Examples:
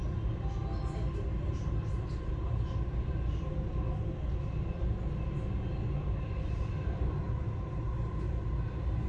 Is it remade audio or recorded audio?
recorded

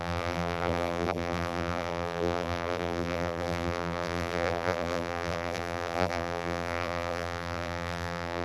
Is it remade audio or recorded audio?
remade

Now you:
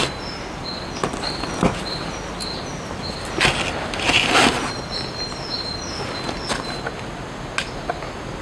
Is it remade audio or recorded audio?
recorded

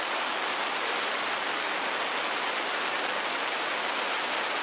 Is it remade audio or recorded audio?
recorded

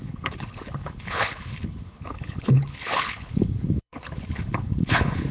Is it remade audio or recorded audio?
remade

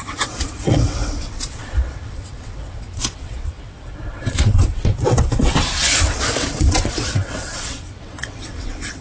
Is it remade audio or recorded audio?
remade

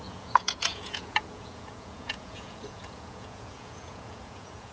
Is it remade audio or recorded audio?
remade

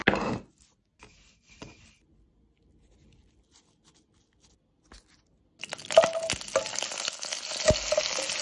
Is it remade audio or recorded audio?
recorded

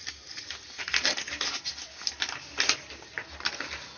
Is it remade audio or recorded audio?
recorded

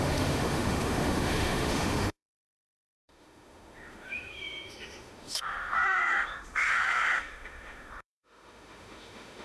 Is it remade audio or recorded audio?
remade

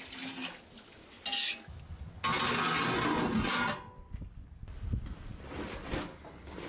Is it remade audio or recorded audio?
recorded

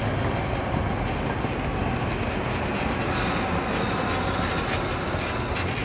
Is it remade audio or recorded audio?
recorded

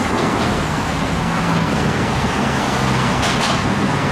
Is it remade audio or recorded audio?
remade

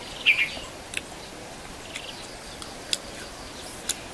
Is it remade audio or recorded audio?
recorded